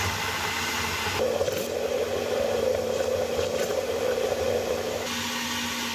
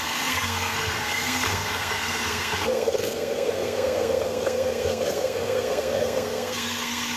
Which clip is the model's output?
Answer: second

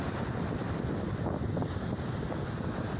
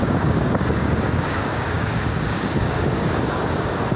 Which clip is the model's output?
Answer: second